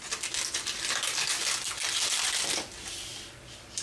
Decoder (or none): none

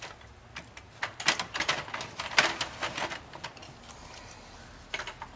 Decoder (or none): none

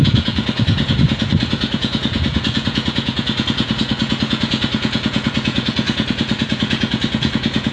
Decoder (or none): vocoder, Vocos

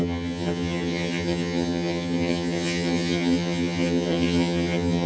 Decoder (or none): vocoder, HiFi-GAN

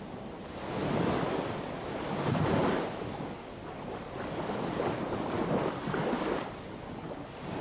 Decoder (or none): none